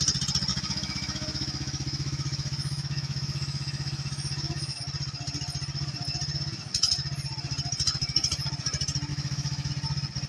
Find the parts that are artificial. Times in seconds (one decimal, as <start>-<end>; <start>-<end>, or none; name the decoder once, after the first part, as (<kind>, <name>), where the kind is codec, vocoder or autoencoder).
0.5-4.8 (autoencoder, DAC-VAE); 9.1-9.7